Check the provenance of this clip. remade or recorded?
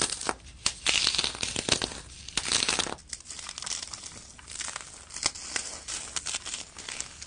recorded